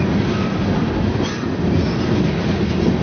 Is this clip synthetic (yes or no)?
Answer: no